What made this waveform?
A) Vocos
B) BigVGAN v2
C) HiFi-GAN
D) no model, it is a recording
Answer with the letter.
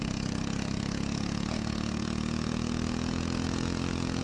A